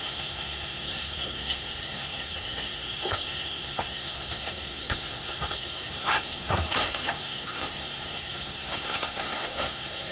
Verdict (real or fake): fake